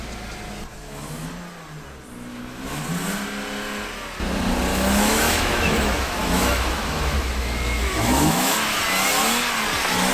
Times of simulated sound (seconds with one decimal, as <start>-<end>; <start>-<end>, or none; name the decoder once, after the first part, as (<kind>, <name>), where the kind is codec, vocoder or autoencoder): 0.7-1.3 (autoencoder, DAC-VAE); 2.3-2.8; 4.7-8.8